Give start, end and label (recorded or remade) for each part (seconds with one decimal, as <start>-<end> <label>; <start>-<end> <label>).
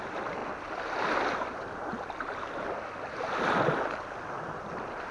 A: 0.0-5.1 recorded